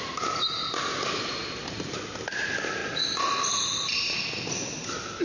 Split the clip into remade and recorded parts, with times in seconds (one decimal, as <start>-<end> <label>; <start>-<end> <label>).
0.0-5.2 recorded